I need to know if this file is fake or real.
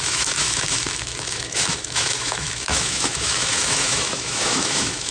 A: fake